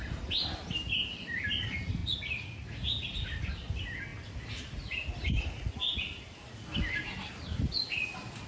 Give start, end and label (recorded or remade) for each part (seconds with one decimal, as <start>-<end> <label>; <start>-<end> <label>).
0.0-2.0 recorded; 2.0-2.7 remade; 2.7-8.5 recorded